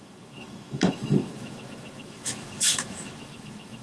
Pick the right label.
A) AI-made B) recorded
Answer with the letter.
A